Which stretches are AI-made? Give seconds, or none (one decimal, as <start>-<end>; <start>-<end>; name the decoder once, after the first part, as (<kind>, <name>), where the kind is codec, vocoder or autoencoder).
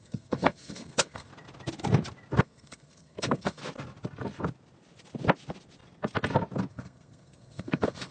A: 0.0-1.3 (codec, SNAC); 2.4-3.6; 6.7-8.1